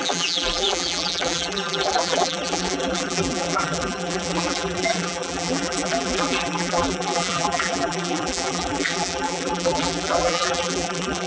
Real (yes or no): no